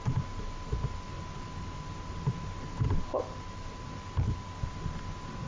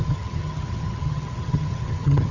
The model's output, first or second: second